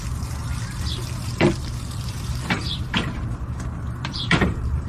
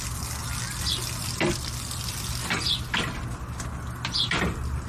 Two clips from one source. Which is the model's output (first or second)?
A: first